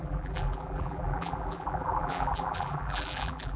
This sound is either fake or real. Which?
fake